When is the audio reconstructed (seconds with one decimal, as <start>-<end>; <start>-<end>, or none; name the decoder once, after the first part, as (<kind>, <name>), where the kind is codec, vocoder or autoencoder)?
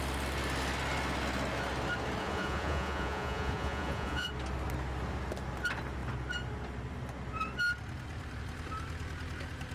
2.2-4.3 (vocoder, Vocos)